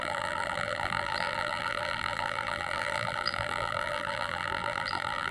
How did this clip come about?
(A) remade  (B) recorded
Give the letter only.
A